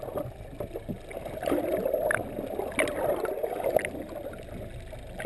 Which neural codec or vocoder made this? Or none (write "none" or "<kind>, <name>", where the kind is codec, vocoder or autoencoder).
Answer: none